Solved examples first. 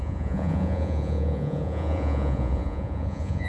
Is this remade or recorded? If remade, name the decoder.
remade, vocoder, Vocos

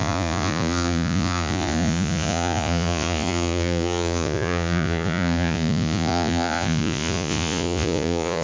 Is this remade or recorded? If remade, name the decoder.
remade, vocoder, Vocos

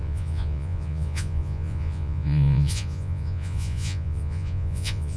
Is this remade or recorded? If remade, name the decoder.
remade, vocoder, Vocos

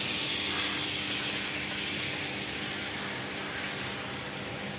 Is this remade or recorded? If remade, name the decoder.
recorded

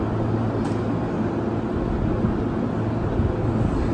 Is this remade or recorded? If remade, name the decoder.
recorded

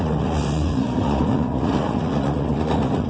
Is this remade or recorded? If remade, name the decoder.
remade, vocoder, Vocos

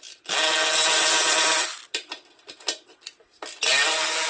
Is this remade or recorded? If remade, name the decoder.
recorded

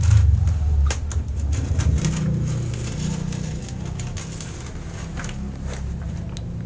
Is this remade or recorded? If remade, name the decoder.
recorded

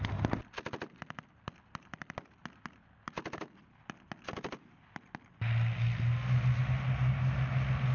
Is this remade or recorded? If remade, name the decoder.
recorded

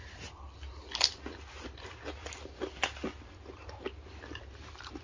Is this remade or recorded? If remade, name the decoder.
recorded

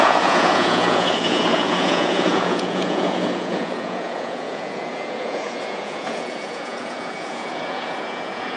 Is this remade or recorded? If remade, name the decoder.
remade, vocoder, Vocos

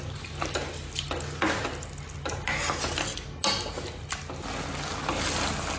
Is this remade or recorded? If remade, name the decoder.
recorded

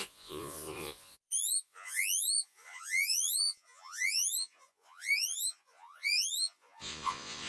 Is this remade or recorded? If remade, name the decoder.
remade, vocoder, Vocos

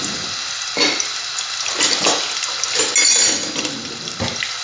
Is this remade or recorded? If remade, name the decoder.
recorded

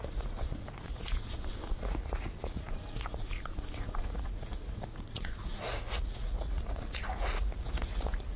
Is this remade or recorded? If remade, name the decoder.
remade, vocoder, Vocos